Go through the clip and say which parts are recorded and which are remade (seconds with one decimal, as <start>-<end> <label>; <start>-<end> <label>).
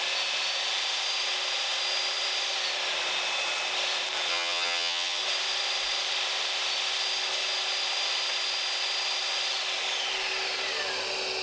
0.0-4.3 recorded; 4.3-5.2 remade; 5.2-11.4 recorded